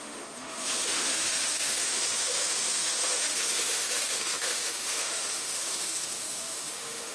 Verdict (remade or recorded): remade